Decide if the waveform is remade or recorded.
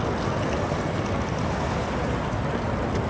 recorded